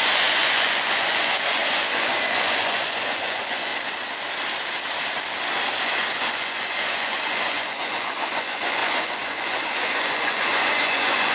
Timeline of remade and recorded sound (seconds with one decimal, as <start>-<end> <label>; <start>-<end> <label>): 0.0-3.7 remade; 3.7-5.8 recorded; 5.8-11.3 remade